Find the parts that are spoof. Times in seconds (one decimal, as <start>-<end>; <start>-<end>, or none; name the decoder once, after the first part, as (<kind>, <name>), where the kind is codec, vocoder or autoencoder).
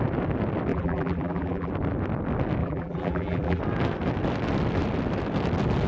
0.7-1.7 (vocoder, BigVGAN v2); 2.6-3.6